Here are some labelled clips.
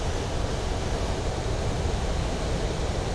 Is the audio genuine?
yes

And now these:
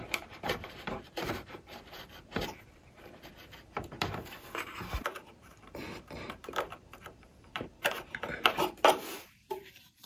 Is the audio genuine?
no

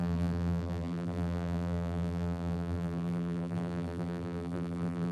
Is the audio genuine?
no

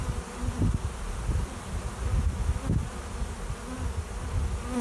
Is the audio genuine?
yes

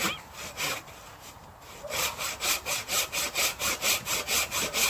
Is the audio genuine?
no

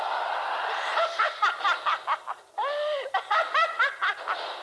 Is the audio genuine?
yes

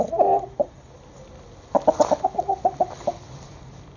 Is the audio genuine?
yes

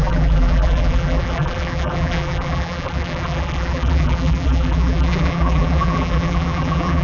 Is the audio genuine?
no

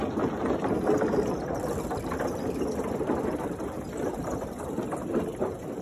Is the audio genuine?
yes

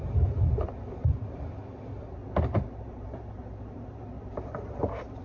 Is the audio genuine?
no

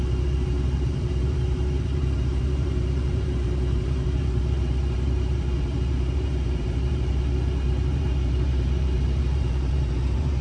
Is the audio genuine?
no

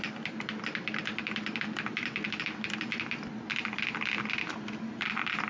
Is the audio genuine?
yes